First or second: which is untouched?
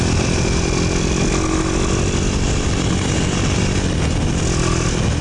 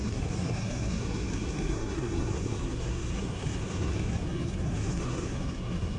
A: first